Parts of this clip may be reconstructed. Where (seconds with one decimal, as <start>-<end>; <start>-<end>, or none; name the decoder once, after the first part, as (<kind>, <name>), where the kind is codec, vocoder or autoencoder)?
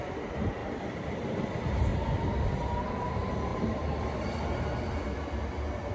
0.6-1.4 (vocoder, BigVGAN v2)